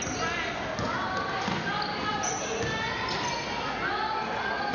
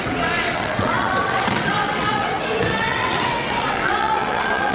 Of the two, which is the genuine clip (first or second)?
first